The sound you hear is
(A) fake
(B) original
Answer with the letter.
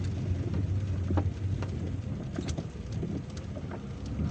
B